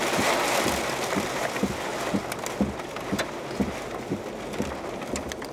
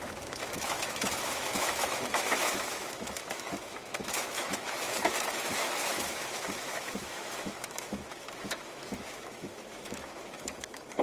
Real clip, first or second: first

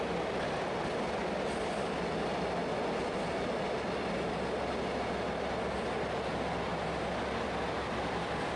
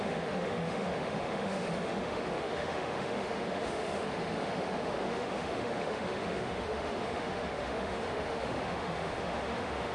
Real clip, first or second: first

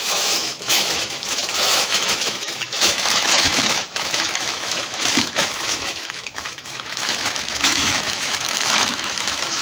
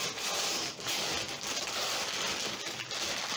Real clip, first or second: second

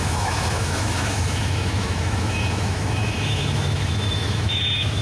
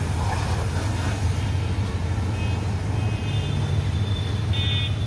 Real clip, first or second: second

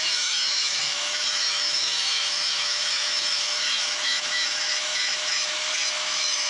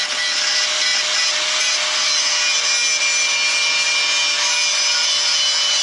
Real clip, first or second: second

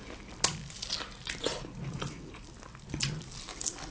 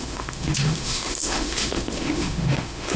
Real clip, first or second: first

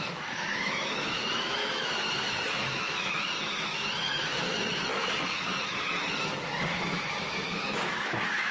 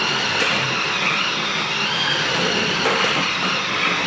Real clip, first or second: second